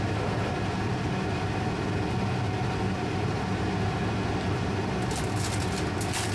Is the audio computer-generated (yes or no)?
no